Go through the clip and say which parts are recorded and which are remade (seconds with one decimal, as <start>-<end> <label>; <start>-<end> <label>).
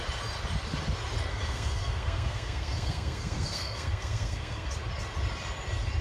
0.0-1.3 recorded; 1.3-4.7 remade; 4.7-6.0 recorded